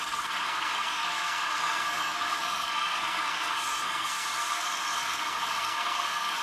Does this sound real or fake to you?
fake